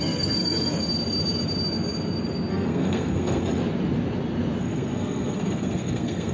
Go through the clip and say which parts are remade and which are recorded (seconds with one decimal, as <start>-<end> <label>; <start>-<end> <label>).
0.0-0.8 remade; 0.8-2.5 recorded; 2.5-3.6 remade; 3.6-4.6 recorded; 4.6-6.3 remade